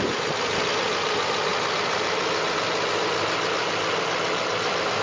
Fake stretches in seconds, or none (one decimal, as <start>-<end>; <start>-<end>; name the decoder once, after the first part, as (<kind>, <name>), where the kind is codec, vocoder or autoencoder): none